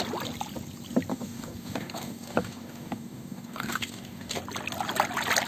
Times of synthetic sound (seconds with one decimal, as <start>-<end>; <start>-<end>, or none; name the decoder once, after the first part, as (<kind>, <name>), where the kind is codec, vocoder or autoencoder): 1.1-4.4 (codec, DAC)